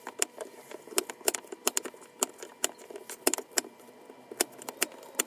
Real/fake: real